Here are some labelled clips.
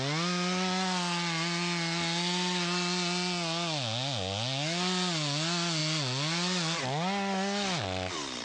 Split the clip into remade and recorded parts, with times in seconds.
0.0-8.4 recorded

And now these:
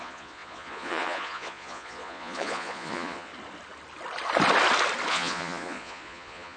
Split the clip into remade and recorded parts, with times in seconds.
0.0-3.3 remade; 3.3-5.1 recorded; 5.1-6.6 remade

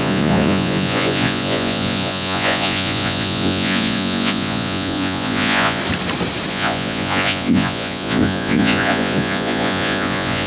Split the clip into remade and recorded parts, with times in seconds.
0.0-5.8 remade; 5.8-6.5 recorded; 6.5-10.5 remade

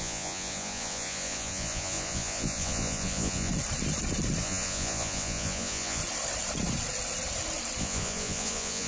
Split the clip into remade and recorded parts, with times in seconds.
0.0-3.5 remade; 3.5-4.4 recorded; 4.4-6.0 remade; 6.0-7.8 recorded; 7.8-8.9 remade

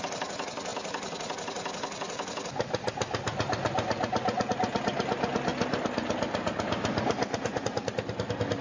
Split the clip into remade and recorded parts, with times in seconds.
0.0-8.6 recorded

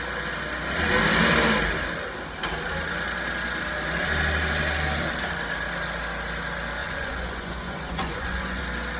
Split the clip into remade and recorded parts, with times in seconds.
0.0-6.8 recorded; 6.8-8.6 remade; 8.6-9.0 recorded